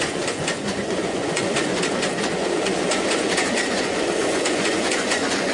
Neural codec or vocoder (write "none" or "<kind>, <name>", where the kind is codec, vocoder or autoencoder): vocoder, Vocos